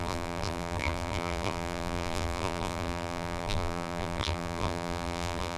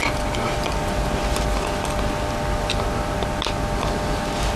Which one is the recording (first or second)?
second